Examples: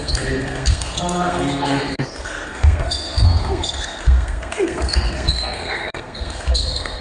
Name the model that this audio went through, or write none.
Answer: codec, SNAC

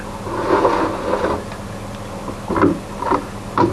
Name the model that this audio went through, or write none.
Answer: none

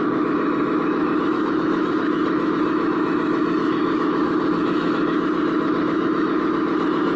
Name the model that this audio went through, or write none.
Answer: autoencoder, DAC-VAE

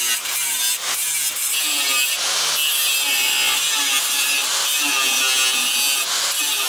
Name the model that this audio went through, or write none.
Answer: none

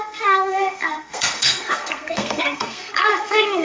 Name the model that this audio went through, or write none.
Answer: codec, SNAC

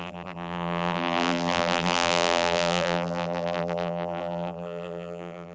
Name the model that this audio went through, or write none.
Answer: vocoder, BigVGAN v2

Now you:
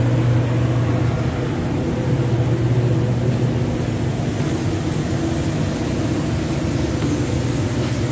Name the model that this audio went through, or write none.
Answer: none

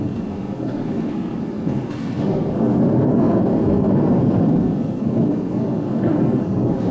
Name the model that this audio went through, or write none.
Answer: codec, SNAC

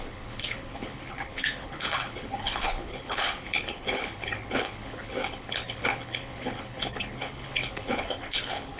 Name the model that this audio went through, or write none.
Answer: codec, HILCodec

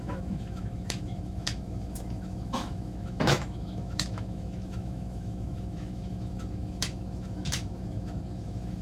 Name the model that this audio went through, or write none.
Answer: autoencoder, DAC-VAE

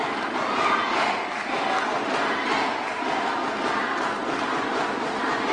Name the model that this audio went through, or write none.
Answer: none